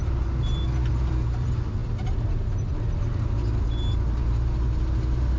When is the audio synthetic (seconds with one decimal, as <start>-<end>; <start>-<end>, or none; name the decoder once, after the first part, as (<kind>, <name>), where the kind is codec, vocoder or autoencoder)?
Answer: none